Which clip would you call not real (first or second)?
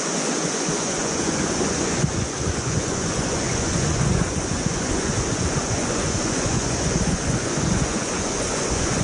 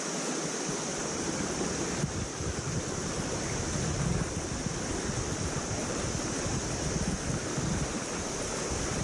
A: first